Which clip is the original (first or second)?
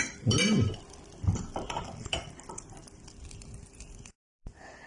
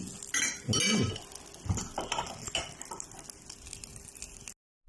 second